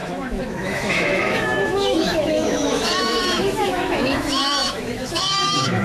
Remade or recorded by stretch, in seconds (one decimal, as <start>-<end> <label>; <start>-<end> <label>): 0.0-5.8 remade